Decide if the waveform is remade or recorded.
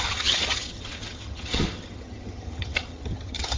remade